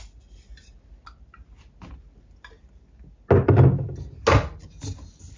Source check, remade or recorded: recorded